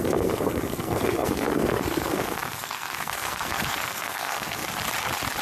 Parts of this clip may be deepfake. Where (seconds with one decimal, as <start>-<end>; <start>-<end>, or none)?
0.0-4.6